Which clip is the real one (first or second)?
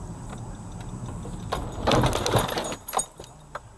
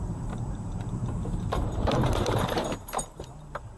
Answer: first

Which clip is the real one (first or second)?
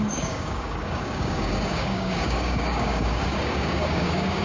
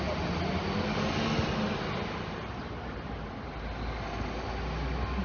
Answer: second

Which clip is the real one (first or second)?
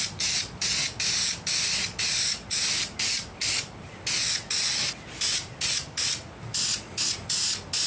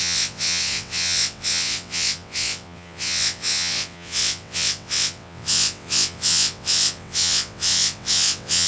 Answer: first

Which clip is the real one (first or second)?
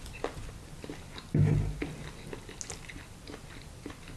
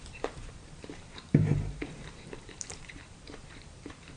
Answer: first